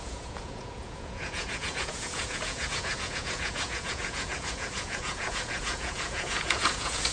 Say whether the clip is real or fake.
fake